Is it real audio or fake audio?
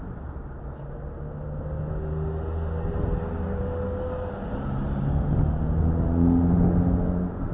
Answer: real